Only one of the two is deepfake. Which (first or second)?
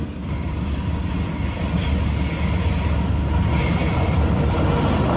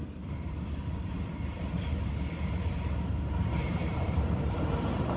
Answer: second